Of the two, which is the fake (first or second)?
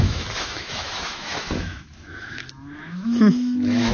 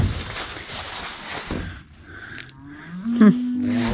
first